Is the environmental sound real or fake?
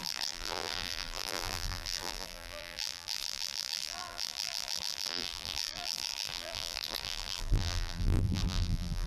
fake